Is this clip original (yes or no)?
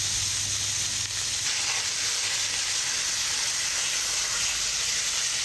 yes